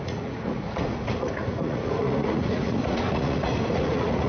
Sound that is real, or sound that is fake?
fake